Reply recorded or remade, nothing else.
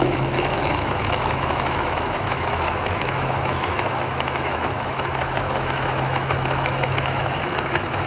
remade